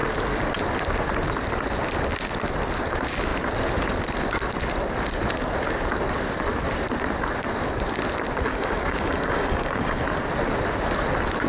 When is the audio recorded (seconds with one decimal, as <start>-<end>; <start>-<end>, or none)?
0.0-8.5; 10.0-11.5